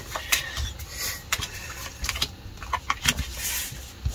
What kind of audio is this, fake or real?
real